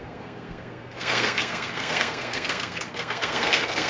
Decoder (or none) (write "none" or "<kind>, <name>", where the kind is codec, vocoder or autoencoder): codec, SNAC